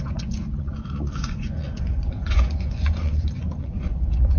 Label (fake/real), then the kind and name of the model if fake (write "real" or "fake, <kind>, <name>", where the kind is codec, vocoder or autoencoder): fake, vocoder, Vocos